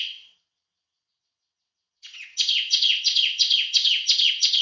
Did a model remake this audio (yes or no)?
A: yes